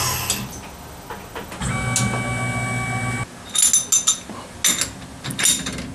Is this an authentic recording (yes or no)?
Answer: yes